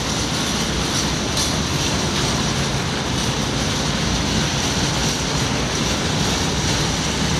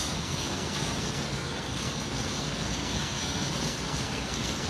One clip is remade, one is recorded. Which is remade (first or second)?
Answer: second